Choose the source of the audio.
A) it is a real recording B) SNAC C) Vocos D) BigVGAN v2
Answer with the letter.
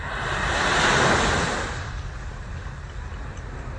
A